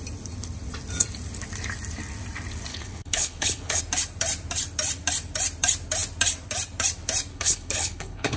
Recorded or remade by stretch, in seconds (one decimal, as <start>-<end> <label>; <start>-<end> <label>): 0.0-2.7 recorded; 2.7-3.8 remade; 3.8-7.3 recorded; 7.3-8.4 remade